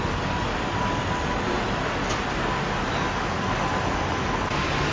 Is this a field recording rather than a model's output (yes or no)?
yes